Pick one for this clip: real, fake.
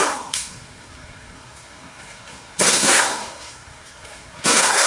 fake